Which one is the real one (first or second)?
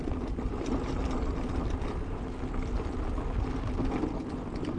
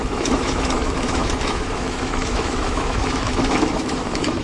first